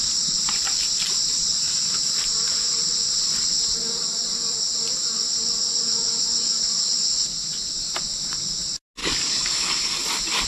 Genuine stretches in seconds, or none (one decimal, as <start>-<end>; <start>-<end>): 0.0-9.0; 10.0-10.5